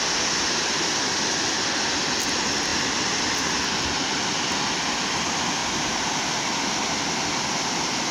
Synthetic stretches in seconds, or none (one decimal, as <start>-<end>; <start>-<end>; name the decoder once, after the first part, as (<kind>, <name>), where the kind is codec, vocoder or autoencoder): none